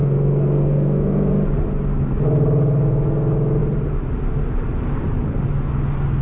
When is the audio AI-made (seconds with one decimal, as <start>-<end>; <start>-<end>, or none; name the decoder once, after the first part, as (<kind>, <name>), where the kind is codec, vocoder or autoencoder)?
0.0-1.3 (codec, SNAC)